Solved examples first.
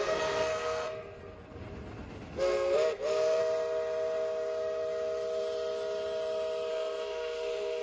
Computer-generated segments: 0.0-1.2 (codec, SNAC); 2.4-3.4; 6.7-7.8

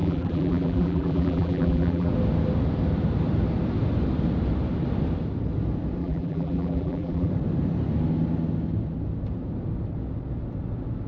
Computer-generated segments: 0.0-2.1 (vocoder, BigVGAN v2); 6.0-7.3

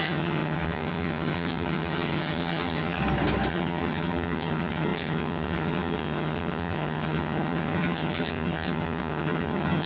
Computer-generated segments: 0.0-3.0 (vocoder, HiFi-GAN); 3.5-9.9

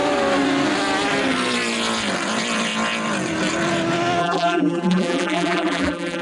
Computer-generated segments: 4.2-6.2 (vocoder, BigVGAN v2)